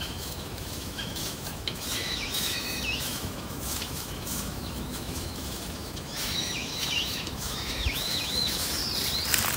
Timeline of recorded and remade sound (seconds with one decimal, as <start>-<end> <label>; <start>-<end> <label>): 0.0-8.8 remade; 8.8-9.6 recorded

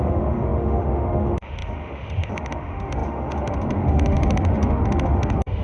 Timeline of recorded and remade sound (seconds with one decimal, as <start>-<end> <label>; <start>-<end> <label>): 0.0-5.6 remade

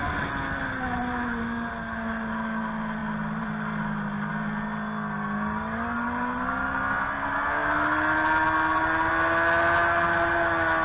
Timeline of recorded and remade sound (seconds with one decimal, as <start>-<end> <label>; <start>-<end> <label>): 0.0-10.8 recorded